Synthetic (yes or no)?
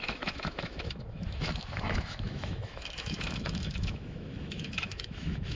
yes